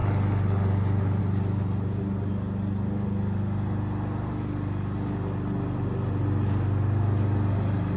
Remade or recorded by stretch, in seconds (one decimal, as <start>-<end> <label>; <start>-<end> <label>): 0.0-8.0 recorded